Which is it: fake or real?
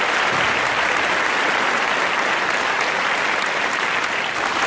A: fake